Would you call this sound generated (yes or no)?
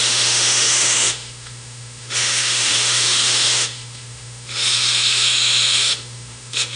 yes